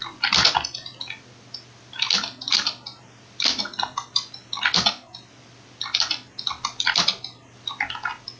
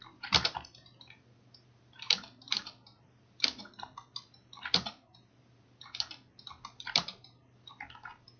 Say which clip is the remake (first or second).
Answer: second